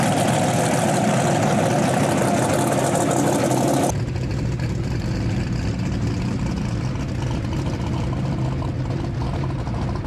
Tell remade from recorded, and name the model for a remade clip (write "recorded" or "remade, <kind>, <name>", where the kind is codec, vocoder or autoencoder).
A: recorded